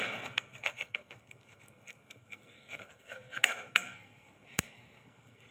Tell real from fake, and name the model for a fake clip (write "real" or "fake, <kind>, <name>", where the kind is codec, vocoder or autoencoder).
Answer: fake, codec, SNAC